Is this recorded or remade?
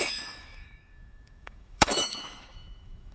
remade